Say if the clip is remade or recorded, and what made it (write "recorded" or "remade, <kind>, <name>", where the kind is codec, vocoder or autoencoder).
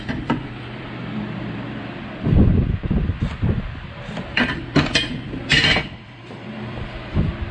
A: remade, vocoder, BigVGAN v2